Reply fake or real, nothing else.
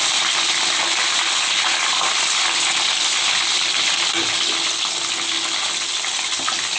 real